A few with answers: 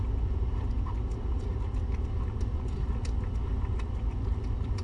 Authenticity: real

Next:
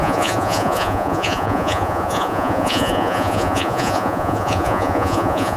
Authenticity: fake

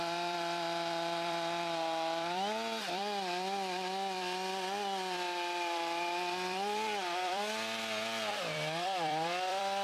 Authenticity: fake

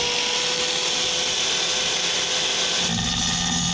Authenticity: real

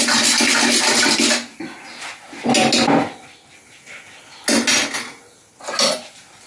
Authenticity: real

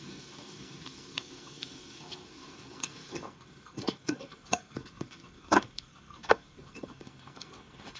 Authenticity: fake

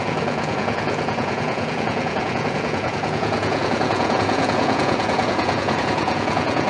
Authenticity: fake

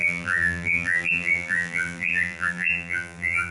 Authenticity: fake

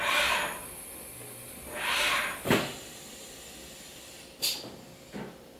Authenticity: real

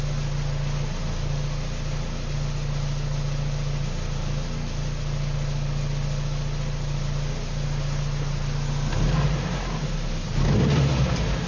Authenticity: real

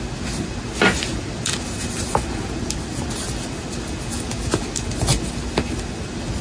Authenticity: real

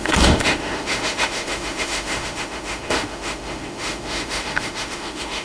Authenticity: fake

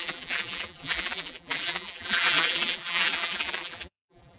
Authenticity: fake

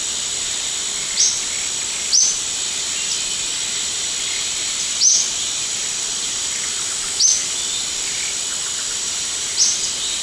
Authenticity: real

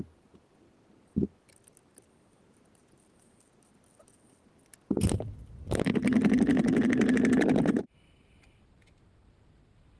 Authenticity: real